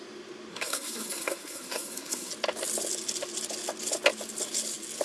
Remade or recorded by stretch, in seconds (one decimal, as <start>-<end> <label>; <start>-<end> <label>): 0.0-0.5 recorded; 0.5-2.3 remade; 2.3-5.0 recorded